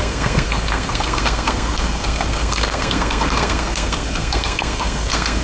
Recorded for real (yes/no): no